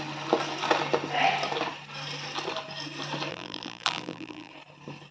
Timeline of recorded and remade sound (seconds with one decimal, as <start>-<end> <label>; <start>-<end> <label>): 0.0-3.3 recorded; 3.3-4.5 remade; 4.5-5.1 recorded